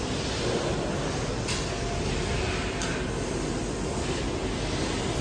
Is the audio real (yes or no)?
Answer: yes